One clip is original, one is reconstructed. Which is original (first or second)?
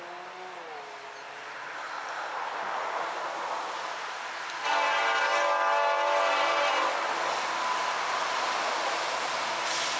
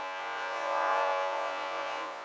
first